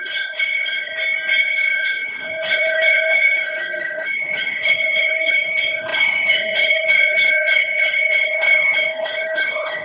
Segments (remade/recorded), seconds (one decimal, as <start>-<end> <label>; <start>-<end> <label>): 0.0-0.9 remade; 0.9-1.4 recorded; 1.4-9.8 remade